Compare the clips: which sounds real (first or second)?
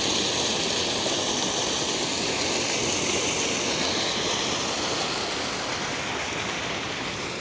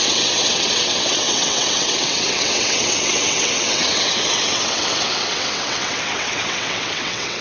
first